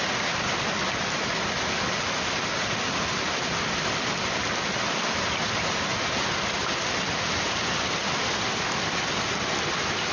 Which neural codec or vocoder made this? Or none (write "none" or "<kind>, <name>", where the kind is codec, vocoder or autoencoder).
none